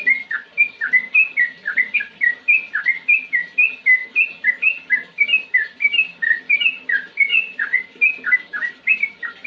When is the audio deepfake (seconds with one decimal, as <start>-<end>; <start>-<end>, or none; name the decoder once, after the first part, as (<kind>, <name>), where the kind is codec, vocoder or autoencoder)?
7.3-7.8 (vocoder, Vocos)